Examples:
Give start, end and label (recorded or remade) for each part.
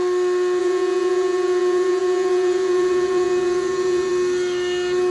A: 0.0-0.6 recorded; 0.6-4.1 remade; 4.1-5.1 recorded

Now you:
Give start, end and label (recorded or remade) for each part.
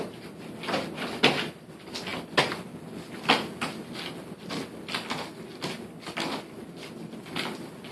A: 0.0-7.9 recorded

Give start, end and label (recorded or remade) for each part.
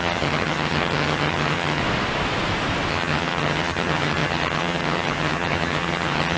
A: 0.0-1.8 remade; 1.8-2.9 recorded; 2.9-6.4 remade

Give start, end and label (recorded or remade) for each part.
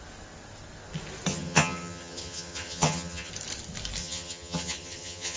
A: 0.0-1.3 recorded; 1.3-3.3 remade; 3.3-4.0 recorded; 4.0-5.4 remade